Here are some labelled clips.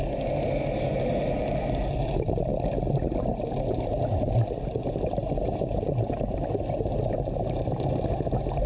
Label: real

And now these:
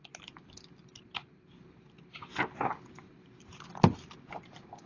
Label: real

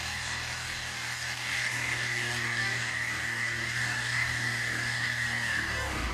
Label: fake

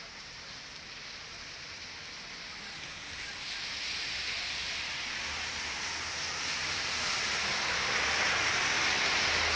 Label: real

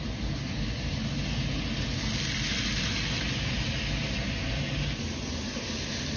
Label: real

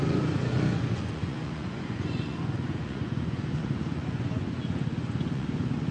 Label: fake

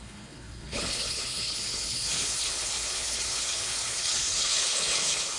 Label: fake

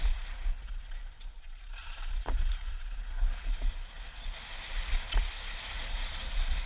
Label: fake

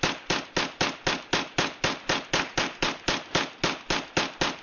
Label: real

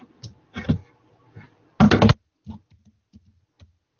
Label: real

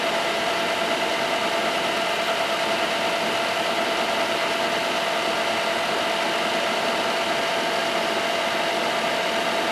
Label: real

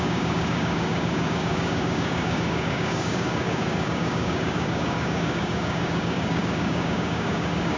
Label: fake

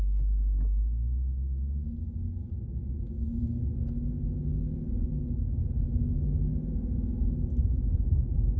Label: real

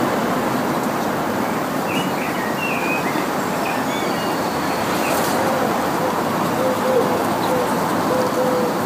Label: real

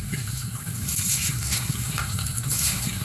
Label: fake